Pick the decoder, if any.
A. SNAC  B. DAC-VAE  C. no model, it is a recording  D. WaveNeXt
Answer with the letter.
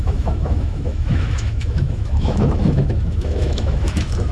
B